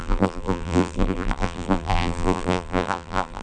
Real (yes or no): no